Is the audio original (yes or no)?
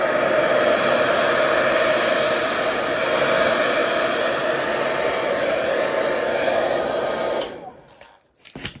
yes